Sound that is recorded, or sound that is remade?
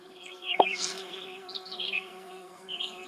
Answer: remade